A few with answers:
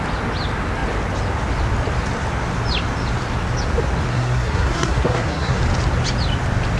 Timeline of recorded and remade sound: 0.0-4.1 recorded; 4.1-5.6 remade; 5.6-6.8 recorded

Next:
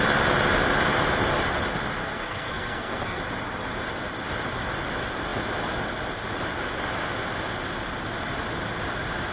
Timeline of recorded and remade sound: 0.0-2.0 recorded; 2.0-3.2 remade; 3.2-9.3 recorded

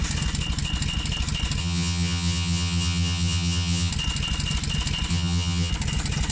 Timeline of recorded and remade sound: 0.0-1.6 recorded; 1.6-3.9 remade; 3.9-5.1 recorded; 5.1-5.7 remade; 5.7-6.3 recorded

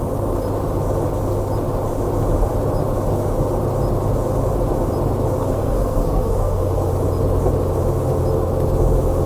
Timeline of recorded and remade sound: 0.0-5.4 recorded; 5.4-6.9 remade; 6.9-9.3 recorded

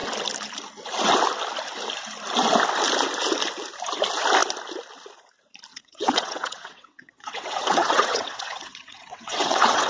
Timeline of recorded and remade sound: 0.0-5.7 recorded; 5.7-9.9 remade

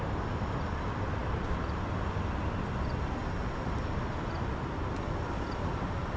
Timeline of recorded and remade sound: 0.0-6.2 recorded